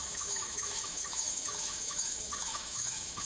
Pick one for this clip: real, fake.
fake